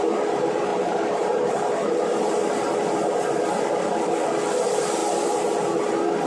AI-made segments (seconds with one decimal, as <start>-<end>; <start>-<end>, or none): 0.0-2.4; 4.6-5.0